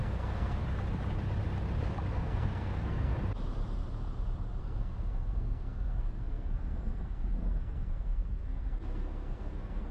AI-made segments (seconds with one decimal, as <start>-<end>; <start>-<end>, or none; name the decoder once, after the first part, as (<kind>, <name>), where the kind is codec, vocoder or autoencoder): 0.0-0.6 (codec, SNAC); 2.1-3.1; 4.6-9.9